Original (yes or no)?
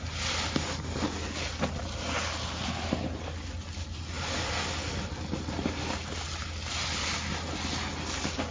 yes